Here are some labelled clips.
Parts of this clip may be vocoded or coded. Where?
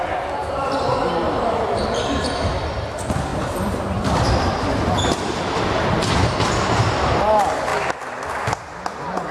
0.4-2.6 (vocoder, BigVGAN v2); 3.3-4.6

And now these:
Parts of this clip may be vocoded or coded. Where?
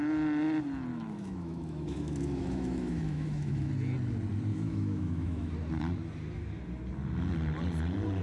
0.9-3.7 (autoencoder, DAC-VAE); 4.5-5.5